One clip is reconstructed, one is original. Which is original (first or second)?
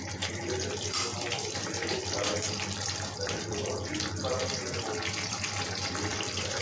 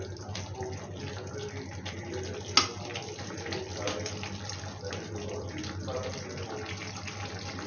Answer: second